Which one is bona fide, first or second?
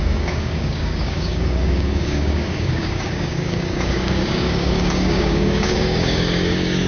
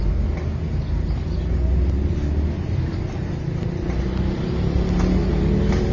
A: second